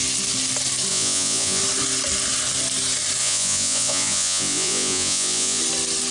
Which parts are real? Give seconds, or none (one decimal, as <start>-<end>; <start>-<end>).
0.0-0.9; 1.6-3.2; 5.6-6.1